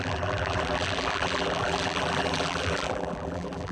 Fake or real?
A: fake